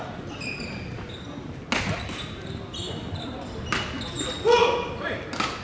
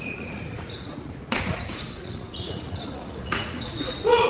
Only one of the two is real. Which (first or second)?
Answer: first